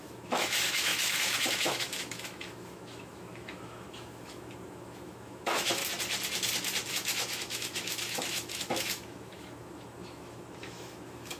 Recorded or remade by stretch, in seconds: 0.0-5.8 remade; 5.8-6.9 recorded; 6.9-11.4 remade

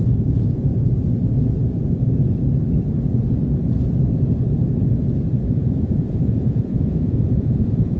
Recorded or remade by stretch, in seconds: 0.0-0.7 remade; 0.7-5.5 recorded; 5.5-8.0 remade

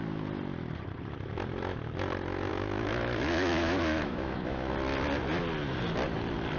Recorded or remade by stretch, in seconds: 0.0-2.5 recorded; 2.5-4.7 remade; 4.7-6.6 recorded

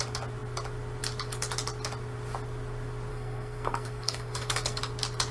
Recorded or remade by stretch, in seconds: 0.0-3.1 recorded; 3.1-4.8 remade; 4.8-5.3 recorded

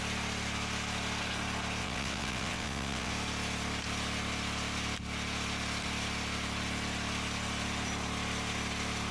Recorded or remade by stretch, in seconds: 0.0-1.8 recorded; 1.8-3.1 remade; 3.1-9.1 recorded

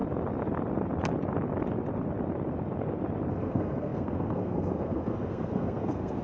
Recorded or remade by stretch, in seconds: 0.0-3.3 recorded; 3.3-6.2 remade

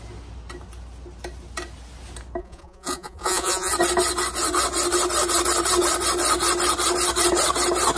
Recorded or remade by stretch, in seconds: 0.0-2.4 recorded; 2.4-3.7 remade; 3.7-8.0 recorded